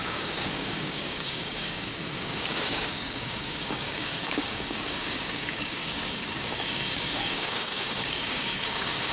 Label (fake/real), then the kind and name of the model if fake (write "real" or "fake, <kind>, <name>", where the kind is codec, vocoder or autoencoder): fake, codec, DAC